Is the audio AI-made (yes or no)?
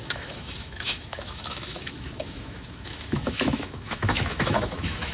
yes